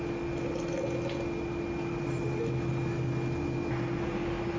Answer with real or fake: real